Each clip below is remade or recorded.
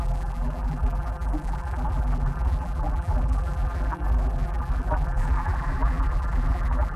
remade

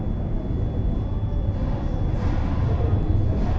recorded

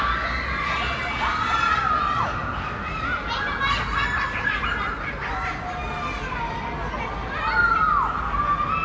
recorded